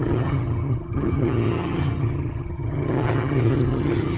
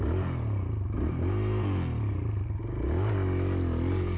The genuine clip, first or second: second